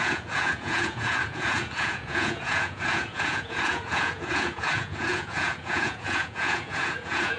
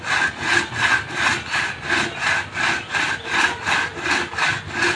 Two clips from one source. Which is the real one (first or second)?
second